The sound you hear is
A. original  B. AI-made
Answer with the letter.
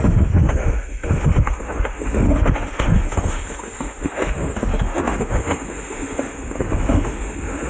B